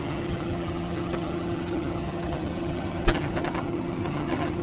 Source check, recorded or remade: remade